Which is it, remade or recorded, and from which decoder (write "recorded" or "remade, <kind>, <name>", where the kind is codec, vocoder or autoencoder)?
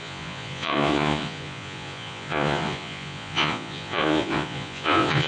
remade, vocoder, Vocos